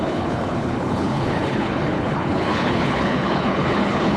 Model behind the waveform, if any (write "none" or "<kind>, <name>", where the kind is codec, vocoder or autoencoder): codec, HILCodec